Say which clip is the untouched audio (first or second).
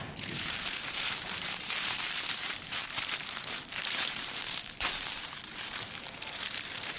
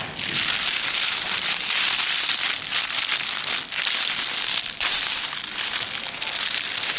second